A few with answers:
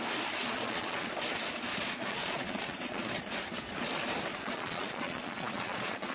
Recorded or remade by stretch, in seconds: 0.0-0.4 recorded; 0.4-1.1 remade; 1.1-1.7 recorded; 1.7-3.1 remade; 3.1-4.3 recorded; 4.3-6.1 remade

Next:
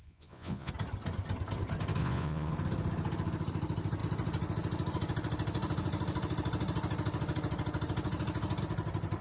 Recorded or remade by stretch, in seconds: 0.0-0.7 remade; 0.7-2.0 recorded; 2.0-2.5 remade; 2.5-9.2 recorded